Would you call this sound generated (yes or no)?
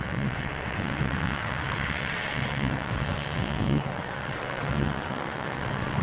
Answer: yes